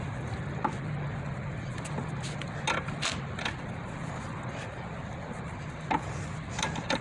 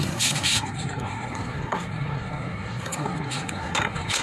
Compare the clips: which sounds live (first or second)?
first